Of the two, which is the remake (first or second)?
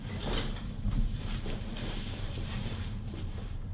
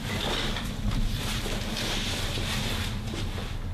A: first